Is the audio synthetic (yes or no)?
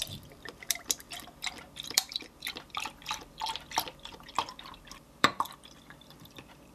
yes